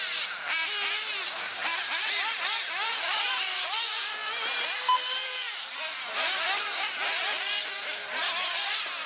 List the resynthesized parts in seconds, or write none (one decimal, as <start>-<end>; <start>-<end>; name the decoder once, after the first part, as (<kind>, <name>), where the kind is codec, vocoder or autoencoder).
none